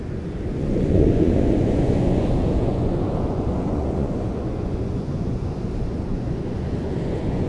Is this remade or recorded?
remade